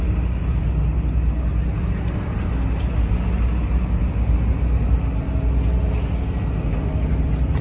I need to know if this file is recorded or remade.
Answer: recorded